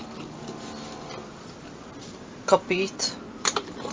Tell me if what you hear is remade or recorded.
recorded